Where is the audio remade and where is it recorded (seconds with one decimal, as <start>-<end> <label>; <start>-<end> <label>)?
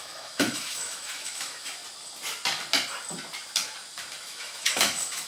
0.0-1.8 remade; 1.8-4.2 recorded; 4.2-5.3 remade